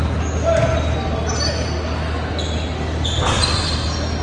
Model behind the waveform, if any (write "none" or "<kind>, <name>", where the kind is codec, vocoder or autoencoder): none